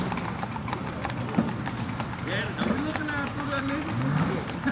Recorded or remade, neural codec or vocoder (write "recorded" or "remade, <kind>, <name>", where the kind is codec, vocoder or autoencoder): recorded